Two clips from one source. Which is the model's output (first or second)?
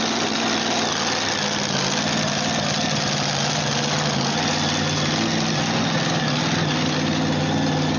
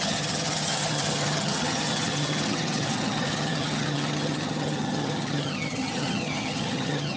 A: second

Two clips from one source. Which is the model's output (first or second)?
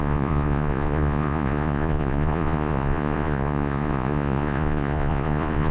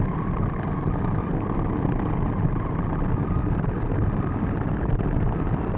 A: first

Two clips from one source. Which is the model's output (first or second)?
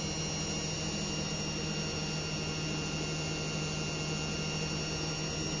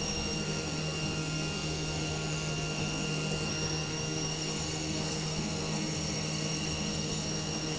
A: second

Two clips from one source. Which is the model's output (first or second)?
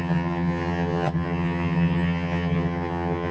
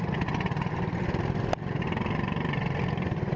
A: first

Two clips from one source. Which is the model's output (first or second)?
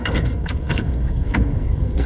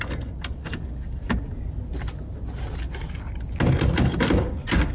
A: first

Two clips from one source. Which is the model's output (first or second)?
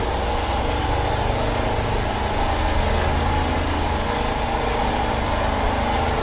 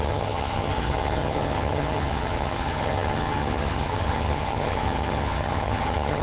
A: second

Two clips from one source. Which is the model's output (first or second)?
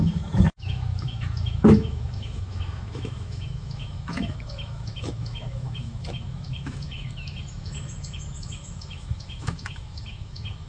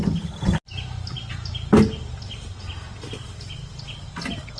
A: first